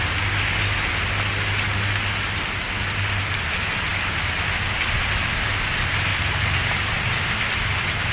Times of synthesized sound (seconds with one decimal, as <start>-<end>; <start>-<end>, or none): 6.1-6.9